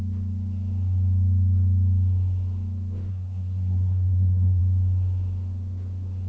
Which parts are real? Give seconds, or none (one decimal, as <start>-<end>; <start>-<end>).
0.0-3.1; 4.6-6.3